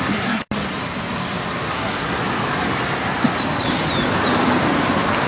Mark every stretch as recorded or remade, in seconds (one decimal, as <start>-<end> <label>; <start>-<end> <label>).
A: 0.0-0.4 remade; 0.4-1.7 recorded; 1.7-2.2 remade; 2.2-5.3 recorded